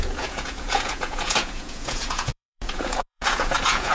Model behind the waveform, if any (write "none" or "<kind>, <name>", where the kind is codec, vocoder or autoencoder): vocoder, Vocos